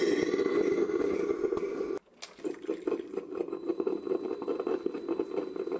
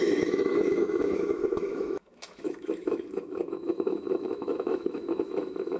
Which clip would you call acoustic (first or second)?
first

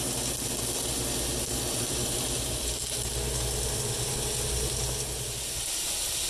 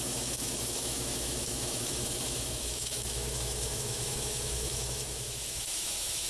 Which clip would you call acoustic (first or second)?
first